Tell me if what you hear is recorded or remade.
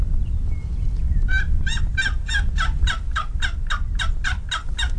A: recorded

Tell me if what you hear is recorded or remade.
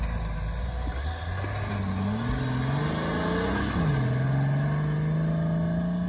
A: recorded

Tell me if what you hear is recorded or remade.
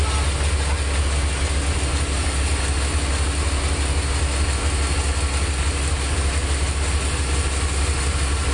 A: recorded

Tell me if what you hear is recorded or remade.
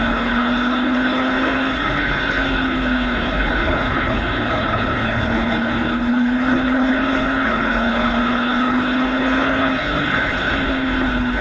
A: remade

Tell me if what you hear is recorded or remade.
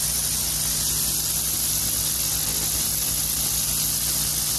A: recorded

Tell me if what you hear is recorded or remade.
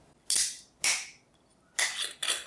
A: recorded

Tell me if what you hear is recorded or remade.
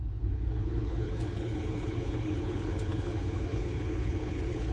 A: remade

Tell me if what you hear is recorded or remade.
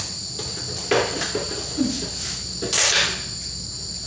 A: recorded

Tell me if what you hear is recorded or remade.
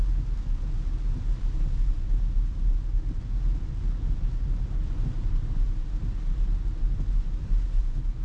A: recorded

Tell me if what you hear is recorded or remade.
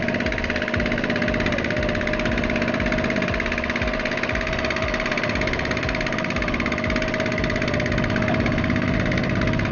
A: recorded